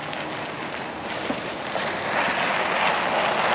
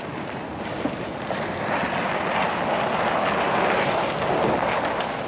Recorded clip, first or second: first